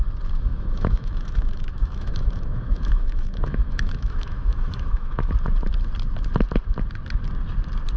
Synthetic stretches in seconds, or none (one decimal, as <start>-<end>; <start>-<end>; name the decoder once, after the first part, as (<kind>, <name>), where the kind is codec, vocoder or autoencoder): 0.5-5.3 (autoencoder, DAC-VAE)